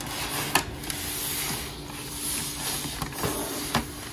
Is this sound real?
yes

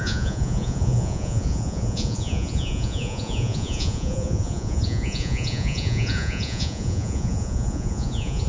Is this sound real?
no